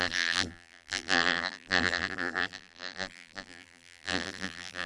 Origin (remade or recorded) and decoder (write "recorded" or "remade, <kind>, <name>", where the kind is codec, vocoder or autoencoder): remade, vocoder, BigVGAN v2